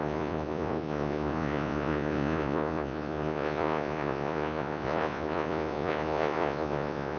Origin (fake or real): fake